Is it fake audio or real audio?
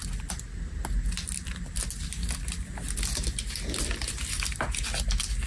real